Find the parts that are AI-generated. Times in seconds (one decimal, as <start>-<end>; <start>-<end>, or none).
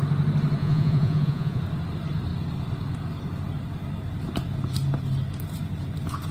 0.6-1.6